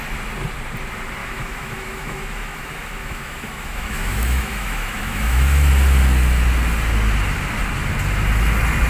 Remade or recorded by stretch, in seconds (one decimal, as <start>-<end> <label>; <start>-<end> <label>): 0.0-1.2 recorded; 1.2-5.7 remade; 5.7-8.9 recorded